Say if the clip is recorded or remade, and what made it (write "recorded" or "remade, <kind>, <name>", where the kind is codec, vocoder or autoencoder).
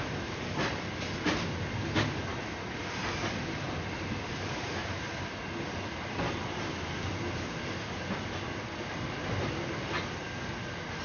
recorded